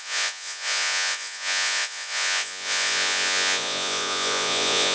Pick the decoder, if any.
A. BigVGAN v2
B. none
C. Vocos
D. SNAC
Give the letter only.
C